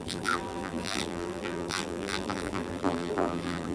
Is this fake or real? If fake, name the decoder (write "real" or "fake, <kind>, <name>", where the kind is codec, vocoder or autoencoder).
fake, vocoder, BigVGAN v2